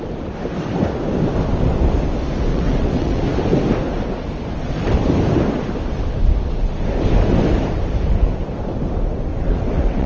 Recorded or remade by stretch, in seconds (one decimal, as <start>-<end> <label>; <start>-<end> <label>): 0.0-2.5 recorded; 2.5-3.2 remade; 3.2-9.3 recorded; 9.3-10.1 remade